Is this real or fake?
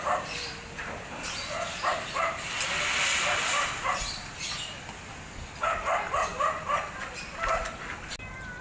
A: real